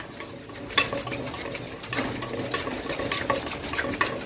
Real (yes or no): yes